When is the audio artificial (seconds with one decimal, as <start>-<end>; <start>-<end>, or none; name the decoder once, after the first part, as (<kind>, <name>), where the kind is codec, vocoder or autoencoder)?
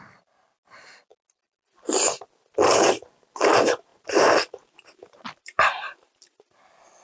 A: 3.9-6.5 (vocoder, BigVGAN v2)